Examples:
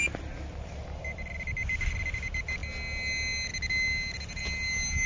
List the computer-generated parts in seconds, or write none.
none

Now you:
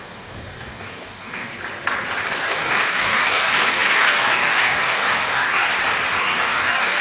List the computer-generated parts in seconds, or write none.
0.0-1.5 (codec, DAC); 2.4-5.7; 6.2-7.0